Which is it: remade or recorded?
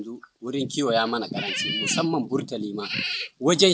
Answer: recorded